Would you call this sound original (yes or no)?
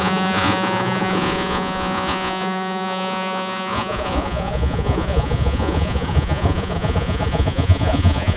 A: no